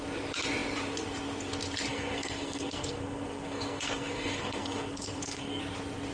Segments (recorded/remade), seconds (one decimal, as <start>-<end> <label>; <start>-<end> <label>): 0.0-1.9 recorded; 1.9-5.6 remade; 5.6-6.1 recorded